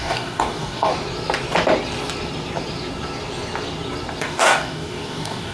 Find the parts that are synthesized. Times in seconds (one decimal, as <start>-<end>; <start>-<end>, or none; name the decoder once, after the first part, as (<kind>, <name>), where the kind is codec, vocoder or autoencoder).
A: 0.0-0.9 (codec, DAC); 4.2-5.5